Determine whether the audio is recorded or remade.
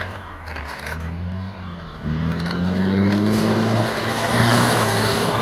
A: remade